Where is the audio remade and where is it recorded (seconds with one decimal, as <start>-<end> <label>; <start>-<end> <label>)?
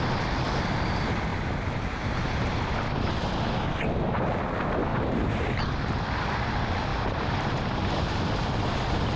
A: 0.0-1.3 recorded; 1.3-2.5 remade; 2.5-4.9 recorded; 4.9-5.5 remade; 5.5-6.9 recorded; 6.9-8.3 remade; 8.3-9.2 recorded